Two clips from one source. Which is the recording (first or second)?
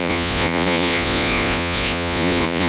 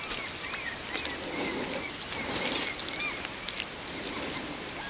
second